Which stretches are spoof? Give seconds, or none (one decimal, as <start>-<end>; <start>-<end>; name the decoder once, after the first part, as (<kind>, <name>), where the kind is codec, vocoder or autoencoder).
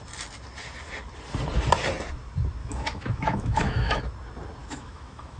2.6-4.0 (autoencoder, DAC-VAE); 4.6-5.4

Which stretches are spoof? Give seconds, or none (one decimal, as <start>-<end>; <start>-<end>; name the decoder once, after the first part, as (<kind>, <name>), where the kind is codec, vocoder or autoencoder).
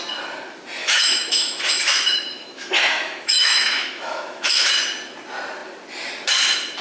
0.8-4.7 (autoencoder, DAC-VAE)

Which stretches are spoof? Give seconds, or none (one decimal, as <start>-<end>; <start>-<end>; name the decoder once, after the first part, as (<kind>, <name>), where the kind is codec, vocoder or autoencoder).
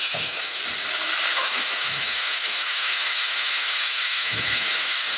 0.0-0.6 (autoencoder, DAC-VAE); 1.3-5.2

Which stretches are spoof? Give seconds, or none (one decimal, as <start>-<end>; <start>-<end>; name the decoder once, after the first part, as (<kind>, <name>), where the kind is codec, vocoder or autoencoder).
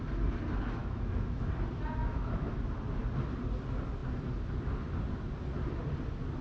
0.8-1.5 (autoencoder, DAC-VAE); 2.0-2.5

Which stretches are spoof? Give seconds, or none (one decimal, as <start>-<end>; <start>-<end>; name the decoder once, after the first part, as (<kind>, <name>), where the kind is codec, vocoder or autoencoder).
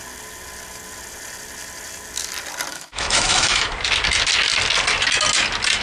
2.7-3.7 (autoencoder, DAC-VAE)